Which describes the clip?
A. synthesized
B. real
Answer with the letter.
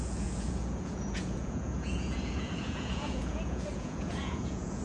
A